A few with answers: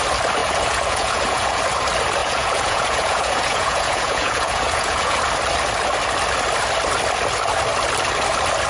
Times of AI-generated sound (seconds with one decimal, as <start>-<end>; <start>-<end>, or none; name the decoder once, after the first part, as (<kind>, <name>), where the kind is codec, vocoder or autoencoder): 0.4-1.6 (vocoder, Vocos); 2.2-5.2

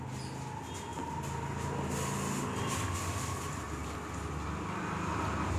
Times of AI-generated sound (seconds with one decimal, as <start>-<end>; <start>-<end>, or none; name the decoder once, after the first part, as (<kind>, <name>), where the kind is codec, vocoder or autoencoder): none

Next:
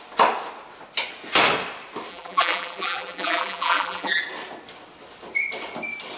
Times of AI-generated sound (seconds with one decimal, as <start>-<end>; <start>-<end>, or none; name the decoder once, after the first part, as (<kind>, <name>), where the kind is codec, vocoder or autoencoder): 2.1-4.2 (vocoder, BigVGAN v2)

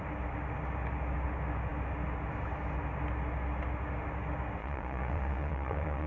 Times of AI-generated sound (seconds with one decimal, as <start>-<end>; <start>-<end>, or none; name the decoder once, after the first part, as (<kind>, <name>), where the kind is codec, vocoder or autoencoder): 4.6-6.1 (vocoder, Vocos)

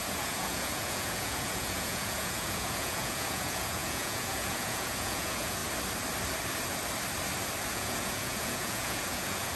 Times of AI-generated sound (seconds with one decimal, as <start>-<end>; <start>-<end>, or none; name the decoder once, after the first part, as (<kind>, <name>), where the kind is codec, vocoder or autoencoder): 0.0-5.6 (vocoder, Vocos); 7.7-9.6

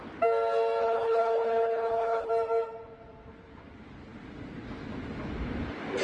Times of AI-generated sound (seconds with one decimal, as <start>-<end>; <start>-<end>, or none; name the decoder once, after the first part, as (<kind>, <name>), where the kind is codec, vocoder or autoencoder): 0.8-2.3 (codec, HILCodec)